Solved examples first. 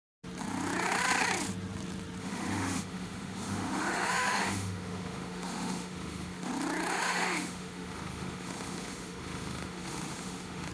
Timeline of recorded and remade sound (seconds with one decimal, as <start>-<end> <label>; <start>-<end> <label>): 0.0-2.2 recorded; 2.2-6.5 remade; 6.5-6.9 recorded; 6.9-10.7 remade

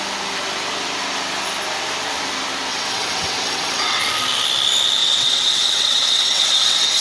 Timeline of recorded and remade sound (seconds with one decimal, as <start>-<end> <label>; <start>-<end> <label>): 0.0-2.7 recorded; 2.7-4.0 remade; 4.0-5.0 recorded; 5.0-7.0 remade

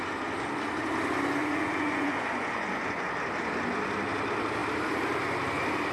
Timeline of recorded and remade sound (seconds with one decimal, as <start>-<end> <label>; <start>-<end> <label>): 0.0-1.4 recorded; 1.4-3.1 remade; 3.1-5.9 recorded

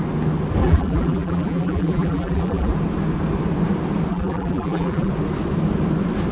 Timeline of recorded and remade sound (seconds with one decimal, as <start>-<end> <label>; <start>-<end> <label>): 0.0-0.6 recorded; 0.6-2.7 remade; 2.7-4.1 recorded; 4.1-5.1 remade; 5.1-6.3 recorded

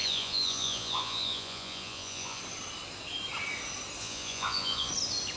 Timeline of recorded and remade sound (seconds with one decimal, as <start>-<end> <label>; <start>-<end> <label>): 0.0-2.4 remade; 2.4-4.0 recorded; 4.0-4.9 remade; 4.9-5.4 recorded